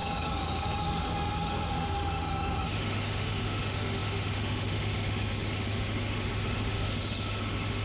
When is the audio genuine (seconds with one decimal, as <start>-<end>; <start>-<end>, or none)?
none